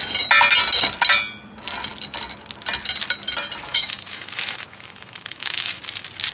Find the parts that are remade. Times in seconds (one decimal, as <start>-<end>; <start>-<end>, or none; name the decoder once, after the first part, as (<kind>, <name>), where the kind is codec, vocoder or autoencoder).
3.7-5.8 (autoencoder, DAC-VAE)